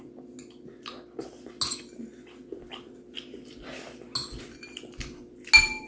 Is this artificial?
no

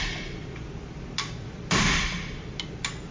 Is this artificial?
yes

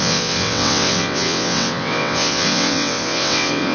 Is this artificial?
yes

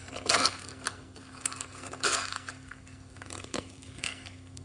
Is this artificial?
yes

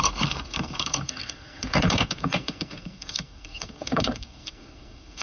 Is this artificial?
yes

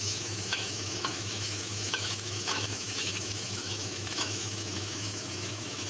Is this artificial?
yes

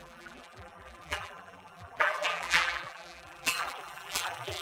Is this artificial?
yes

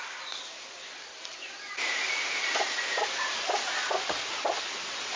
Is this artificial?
no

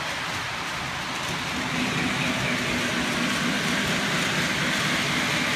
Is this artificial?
no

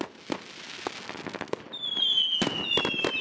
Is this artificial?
no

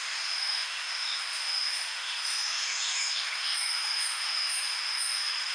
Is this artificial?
yes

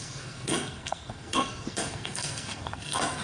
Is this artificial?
yes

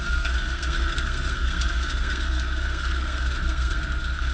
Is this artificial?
yes